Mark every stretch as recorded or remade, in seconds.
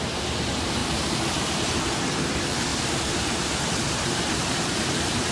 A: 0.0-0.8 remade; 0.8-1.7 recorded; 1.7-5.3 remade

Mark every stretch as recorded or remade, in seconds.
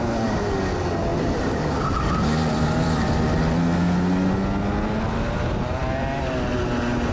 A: 0.0-1.1 recorded; 1.1-3.5 remade; 3.5-7.1 recorded